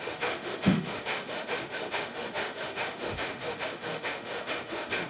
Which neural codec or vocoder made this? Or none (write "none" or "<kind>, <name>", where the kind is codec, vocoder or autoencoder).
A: autoencoder, DAC-VAE